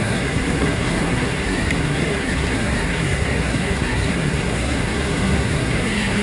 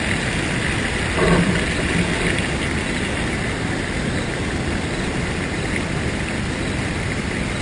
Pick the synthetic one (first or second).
first